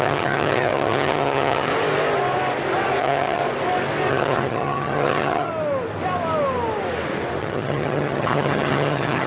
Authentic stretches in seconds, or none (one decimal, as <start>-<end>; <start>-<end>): 1.7-3.0; 3.4-4.1; 5.5-7.4